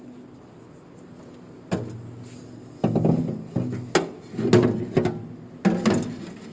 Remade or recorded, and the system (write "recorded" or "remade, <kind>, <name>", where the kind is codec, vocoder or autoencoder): recorded